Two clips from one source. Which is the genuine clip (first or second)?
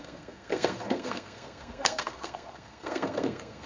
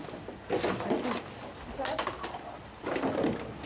second